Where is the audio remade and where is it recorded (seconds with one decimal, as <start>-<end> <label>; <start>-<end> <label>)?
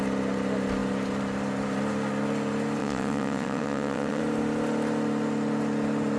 0.0-2.8 recorded; 2.8-4.2 remade; 4.2-6.2 recorded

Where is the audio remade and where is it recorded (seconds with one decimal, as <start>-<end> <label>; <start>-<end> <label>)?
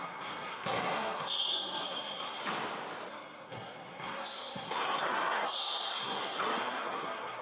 0.0-2.4 remade; 2.4-3.1 recorded; 3.1-7.4 remade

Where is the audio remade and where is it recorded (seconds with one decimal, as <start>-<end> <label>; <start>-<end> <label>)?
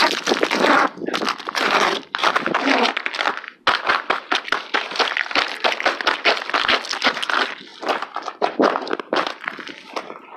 0.0-10.4 recorded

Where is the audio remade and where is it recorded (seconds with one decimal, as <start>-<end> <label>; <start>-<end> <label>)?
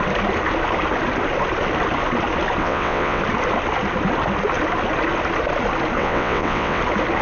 0.0-2.6 recorded; 2.6-3.2 remade; 3.2-6.0 recorded; 6.0-6.8 remade; 6.8-7.2 recorded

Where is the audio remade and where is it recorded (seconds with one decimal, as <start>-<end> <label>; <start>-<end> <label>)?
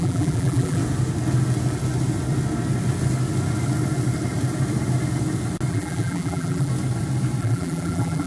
0.0-0.8 remade; 0.8-5.7 recorded; 5.7-6.7 remade; 6.7-7.4 recorded; 7.4-8.3 remade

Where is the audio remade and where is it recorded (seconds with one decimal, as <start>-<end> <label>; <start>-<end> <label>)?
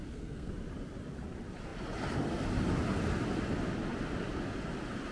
0.0-0.5 remade; 0.5-5.1 recorded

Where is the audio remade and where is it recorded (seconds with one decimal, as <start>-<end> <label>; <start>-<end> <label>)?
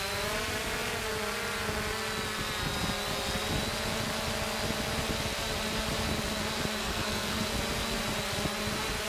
0.0-6.8 recorded; 6.8-7.4 remade; 7.4-9.1 recorded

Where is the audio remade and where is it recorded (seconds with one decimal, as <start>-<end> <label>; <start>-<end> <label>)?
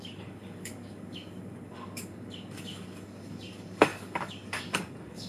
0.0-5.3 remade